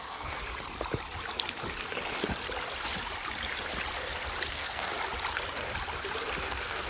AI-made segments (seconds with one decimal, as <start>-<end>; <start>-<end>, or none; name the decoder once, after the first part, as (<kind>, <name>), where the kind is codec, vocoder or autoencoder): 0.0-0.4 (codec, SNAC); 4.5-4.9; 6.4-6.9